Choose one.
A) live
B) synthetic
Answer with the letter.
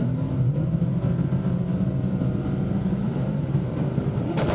B